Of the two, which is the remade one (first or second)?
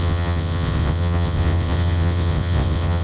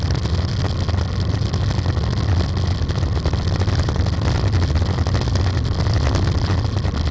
first